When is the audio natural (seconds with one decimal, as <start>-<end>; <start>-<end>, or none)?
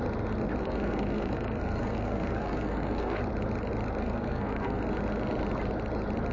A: 0.0-0.6; 3.2-4.0; 4.8-6.3